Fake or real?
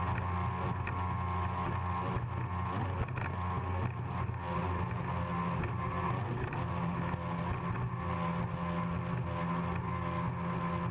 real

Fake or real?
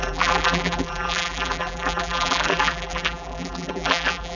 fake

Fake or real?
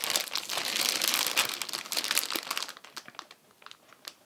real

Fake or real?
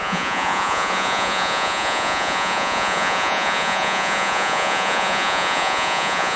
fake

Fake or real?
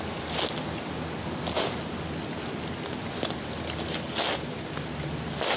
real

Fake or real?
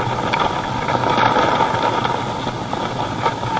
real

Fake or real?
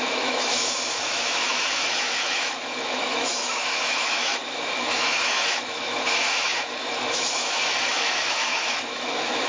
fake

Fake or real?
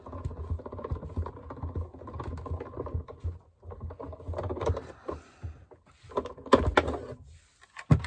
real